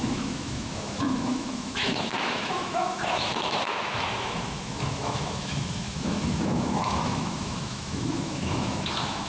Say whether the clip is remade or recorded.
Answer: remade